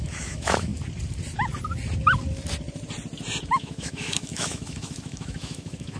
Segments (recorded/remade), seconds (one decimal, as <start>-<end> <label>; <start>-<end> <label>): 0.0-0.7 remade; 0.7-3.5 recorded; 3.5-6.0 remade